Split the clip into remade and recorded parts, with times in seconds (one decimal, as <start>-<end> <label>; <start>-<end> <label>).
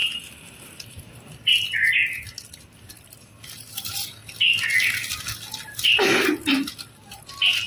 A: 0.0-7.7 recorded